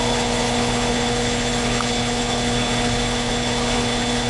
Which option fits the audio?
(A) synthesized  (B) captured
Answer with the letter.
A